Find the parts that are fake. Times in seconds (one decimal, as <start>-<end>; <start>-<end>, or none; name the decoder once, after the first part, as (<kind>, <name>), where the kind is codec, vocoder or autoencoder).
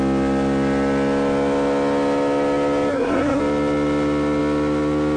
2.9-3.4 (codec, SNAC)